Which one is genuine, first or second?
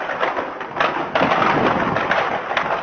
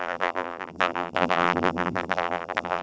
first